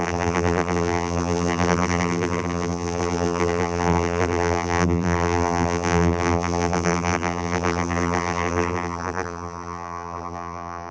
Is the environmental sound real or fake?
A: fake